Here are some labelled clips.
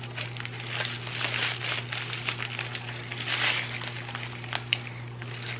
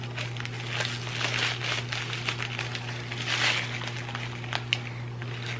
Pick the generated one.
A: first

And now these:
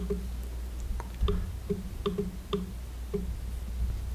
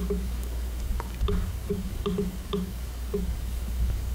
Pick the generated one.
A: second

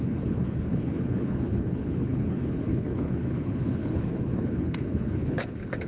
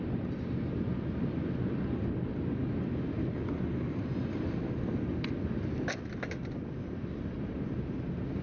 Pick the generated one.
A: first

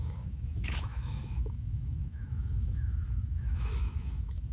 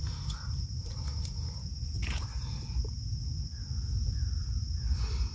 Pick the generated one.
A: first